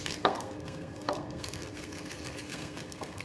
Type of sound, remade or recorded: remade